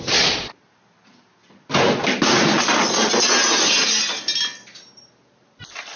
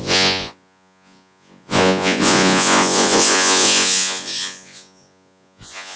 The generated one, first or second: second